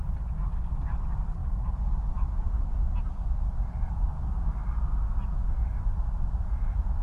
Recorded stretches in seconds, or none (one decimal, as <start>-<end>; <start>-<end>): 0.0-5.6